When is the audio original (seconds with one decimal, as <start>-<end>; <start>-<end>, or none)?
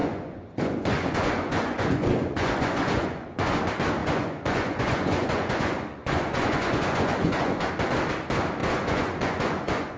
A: 3.6-4.0; 7.7-8.6